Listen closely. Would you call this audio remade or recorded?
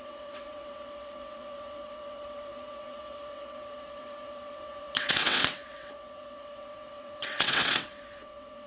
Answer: remade